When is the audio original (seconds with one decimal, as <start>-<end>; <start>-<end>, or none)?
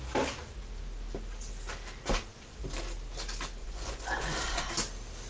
0.0-3.6; 4.7-5.3